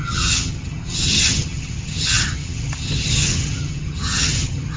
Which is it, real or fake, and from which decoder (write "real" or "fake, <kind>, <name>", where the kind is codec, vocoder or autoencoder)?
fake, vocoder, HiFi-GAN